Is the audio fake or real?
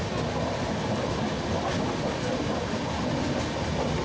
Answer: real